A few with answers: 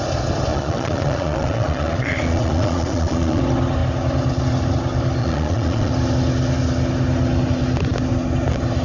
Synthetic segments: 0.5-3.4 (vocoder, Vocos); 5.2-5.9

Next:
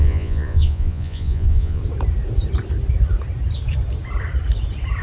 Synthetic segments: 0.0-1.8 (vocoder, Vocos)